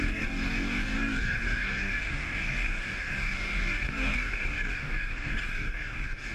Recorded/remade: remade